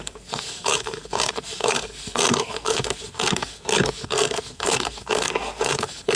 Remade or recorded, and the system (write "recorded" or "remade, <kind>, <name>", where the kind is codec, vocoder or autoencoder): remade, codec, SNAC